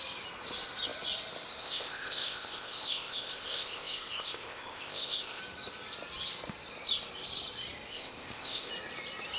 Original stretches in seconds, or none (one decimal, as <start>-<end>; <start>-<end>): 0.0-1.6; 5.4-7.9; 8.7-9.4